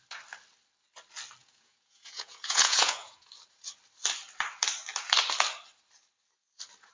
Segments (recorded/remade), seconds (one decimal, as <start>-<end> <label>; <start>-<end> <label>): 0.0-1.4 recorded; 1.4-3.3 remade; 3.3-6.9 recorded